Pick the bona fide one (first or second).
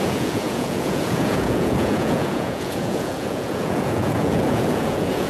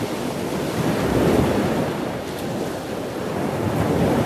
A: second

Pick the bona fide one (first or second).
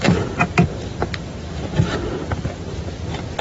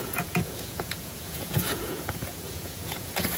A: first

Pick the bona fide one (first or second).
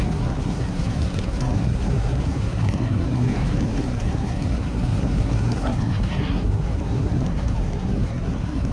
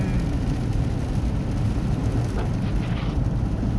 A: second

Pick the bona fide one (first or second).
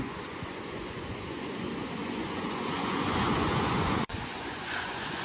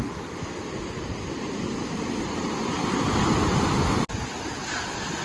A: second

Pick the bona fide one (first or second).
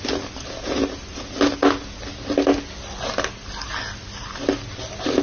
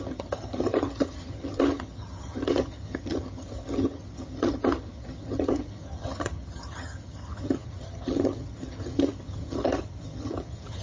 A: first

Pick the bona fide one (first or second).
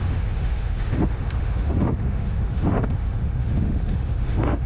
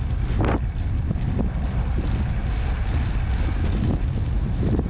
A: second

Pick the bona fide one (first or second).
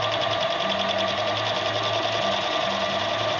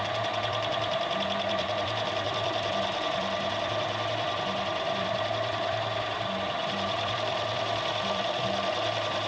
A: first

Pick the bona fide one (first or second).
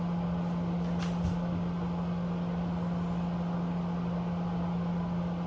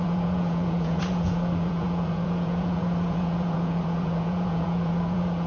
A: first